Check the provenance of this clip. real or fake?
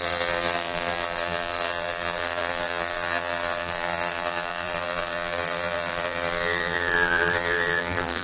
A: fake